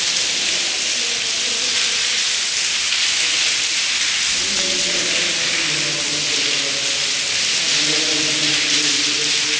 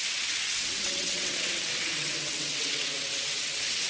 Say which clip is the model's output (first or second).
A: second